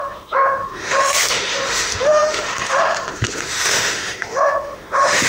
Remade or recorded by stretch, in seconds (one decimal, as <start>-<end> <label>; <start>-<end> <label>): 0.0-5.3 remade